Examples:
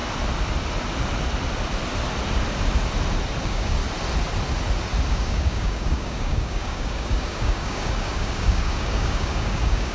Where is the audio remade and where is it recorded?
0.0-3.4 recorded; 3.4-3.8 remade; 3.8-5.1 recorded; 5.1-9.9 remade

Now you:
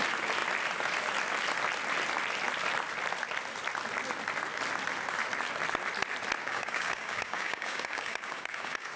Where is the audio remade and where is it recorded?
0.0-6.4 recorded; 6.4-9.0 remade

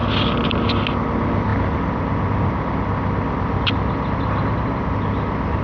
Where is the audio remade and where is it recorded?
0.0-5.6 recorded

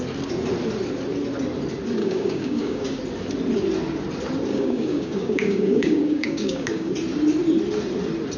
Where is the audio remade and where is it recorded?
0.0-2.0 recorded; 2.0-3.0 remade; 3.0-4.5 recorded; 4.5-6.9 remade; 6.9-8.4 recorded

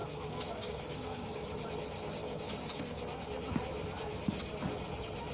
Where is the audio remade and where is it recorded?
0.0-1.7 remade; 1.7-2.2 recorded; 2.2-3.0 remade; 3.0-5.3 recorded

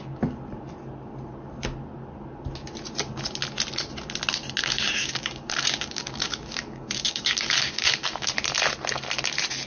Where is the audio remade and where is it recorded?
0.0-4.6 recorded; 4.6-8.3 remade; 8.3-9.7 recorded

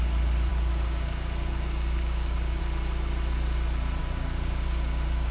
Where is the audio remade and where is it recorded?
0.0-0.5 recorded; 0.5-2.6 remade; 2.6-4.0 recorded; 4.0-5.3 remade

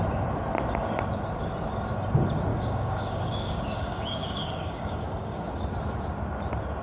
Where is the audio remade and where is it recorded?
0.0-2.5 recorded; 2.5-5.5 remade; 5.5-6.8 recorded